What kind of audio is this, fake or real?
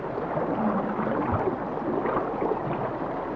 real